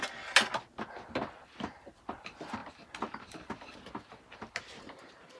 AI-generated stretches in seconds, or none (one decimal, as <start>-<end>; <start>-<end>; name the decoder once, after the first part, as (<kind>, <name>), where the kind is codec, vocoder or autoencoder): none